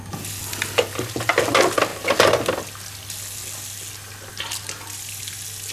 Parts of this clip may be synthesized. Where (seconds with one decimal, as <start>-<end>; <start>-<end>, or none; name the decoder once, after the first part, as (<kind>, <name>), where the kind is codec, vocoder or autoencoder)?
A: none